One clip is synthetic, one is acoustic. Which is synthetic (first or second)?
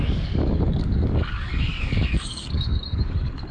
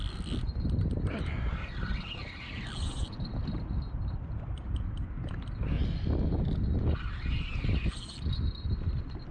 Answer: first